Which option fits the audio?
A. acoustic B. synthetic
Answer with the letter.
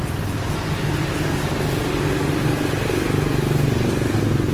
A